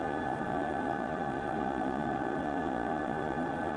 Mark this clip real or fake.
fake